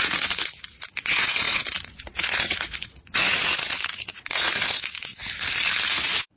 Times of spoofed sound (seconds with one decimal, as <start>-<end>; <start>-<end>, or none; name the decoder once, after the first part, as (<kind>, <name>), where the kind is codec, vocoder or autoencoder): 0.0-5.2 (vocoder, Vocos); 5.9-6.4